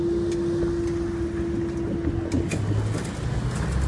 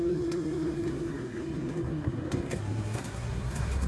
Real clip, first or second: first